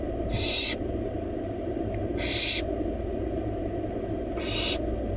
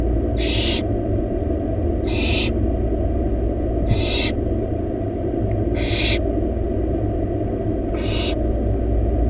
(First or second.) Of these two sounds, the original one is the second